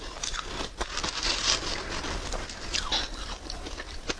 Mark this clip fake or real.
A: real